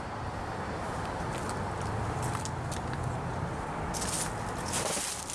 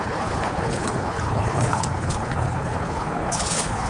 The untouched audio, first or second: first